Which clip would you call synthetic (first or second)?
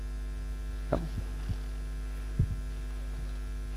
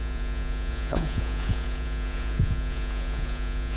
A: second